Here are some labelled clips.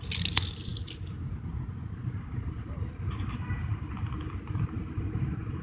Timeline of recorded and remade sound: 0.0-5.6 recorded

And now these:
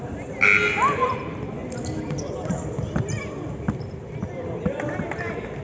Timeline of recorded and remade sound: 0.0-5.6 recorded

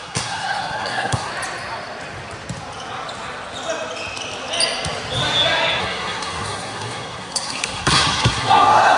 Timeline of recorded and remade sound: 0.0-1.3 remade; 1.3-5.8 recorded; 5.8-9.0 remade

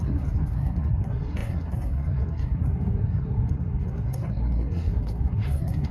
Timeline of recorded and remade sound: 0.0-5.9 remade

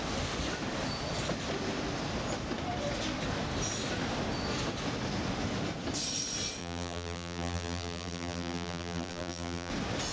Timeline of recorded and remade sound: 0.0-6.6 recorded; 6.6-9.7 remade; 9.7-10.1 recorded